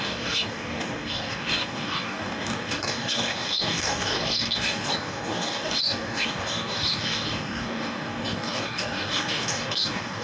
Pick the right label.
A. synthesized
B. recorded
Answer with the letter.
A